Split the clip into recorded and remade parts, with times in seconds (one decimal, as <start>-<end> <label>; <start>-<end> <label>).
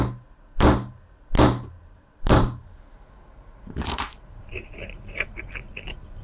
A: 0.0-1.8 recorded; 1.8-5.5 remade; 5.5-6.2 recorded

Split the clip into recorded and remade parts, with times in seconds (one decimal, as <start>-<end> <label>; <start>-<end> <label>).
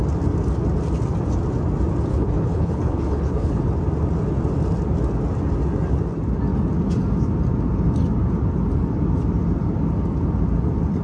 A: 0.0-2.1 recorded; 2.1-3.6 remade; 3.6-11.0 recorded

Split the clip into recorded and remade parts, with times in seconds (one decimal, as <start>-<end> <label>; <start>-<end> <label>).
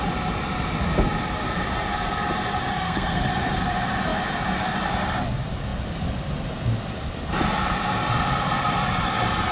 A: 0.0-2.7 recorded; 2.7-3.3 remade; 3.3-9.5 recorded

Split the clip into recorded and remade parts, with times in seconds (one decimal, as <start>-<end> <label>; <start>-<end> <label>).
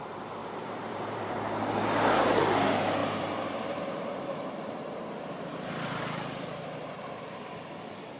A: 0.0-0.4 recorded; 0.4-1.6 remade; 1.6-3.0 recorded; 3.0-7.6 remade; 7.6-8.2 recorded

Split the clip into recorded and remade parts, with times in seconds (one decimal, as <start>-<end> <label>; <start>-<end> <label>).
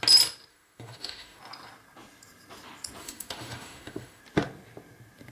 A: 0.0-0.5 recorded; 0.5-1.4 remade; 1.4-3.0 recorded; 3.0-4.2 remade; 4.2-5.3 recorded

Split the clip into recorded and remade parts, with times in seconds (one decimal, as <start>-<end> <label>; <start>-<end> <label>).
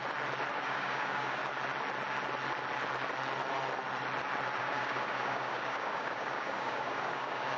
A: 0.0-0.5 recorded; 0.5-1.4 remade; 1.4-4.6 recorded; 4.6-7.6 remade